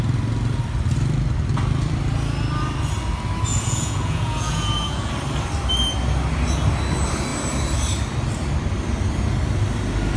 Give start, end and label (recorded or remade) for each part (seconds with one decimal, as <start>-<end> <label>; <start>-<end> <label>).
0.0-3.5 recorded; 3.5-5.1 remade; 5.1-10.2 recorded